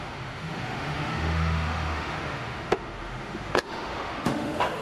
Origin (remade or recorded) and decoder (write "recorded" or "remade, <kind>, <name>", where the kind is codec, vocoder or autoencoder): remade, autoencoder, DAC-VAE